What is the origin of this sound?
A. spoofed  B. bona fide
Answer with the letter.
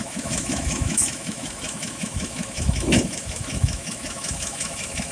A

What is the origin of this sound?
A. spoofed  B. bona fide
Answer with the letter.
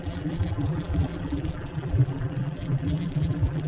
A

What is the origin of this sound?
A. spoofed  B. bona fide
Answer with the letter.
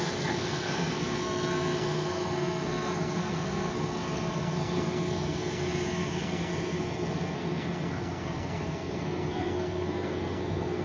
A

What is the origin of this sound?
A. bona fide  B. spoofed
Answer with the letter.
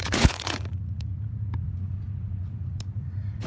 B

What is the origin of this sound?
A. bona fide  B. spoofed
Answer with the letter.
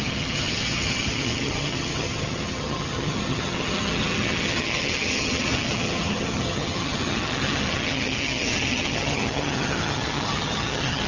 B